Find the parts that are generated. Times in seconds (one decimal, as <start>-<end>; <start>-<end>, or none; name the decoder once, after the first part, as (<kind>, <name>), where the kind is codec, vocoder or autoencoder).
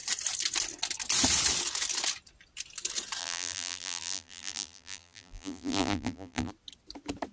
3.2-6.5 (vocoder, BigVGAN v2)